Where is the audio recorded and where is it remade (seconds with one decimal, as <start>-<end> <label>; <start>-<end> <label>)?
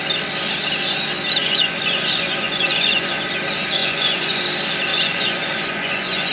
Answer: 0.0-1.4 recorded; 1.4-3.2 remade; 3.2-3.8 recorded; 3.8-4.4 remade; 4.4-4.9 recorded; 4.9-6.3 remade